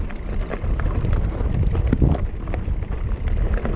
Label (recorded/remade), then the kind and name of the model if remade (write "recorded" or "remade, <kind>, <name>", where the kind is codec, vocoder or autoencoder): recorded